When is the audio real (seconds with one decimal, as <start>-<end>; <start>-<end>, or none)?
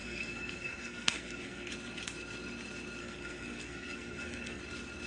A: 1.7-3.0; 4.6-5.1